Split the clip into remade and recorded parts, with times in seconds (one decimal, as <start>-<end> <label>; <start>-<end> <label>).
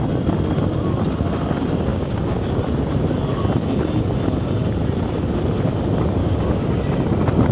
0.0-1.9 recorded; 1.9-2.5 remade; 2.5-6.2 recorded; 6.2-6.8 remade; 6.8-7.5 recorded